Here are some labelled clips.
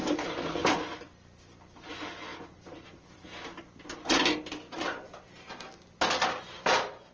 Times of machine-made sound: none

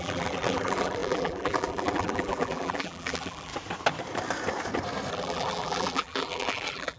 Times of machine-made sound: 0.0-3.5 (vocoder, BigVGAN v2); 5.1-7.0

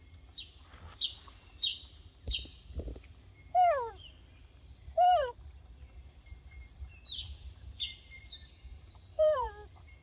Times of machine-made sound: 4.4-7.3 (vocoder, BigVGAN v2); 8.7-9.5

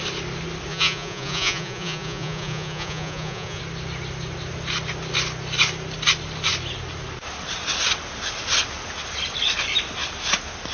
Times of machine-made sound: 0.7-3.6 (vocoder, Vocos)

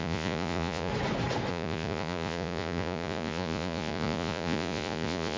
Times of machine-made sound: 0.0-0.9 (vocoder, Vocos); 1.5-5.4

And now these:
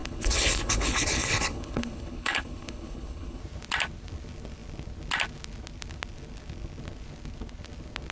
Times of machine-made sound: 0.0-3.4 (codec, HILCodec)

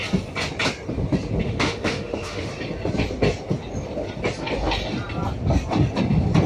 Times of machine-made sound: 1.4-2.5 (autoencoder, DAC-VAE)